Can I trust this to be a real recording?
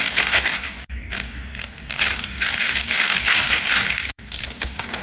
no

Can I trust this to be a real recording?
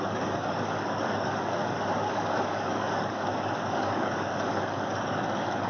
no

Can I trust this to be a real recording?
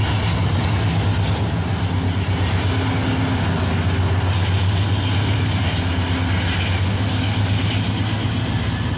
yes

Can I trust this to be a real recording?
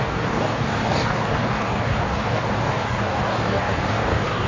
no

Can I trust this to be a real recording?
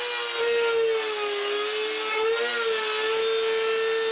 yes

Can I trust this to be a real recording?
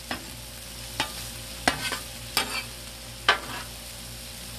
yes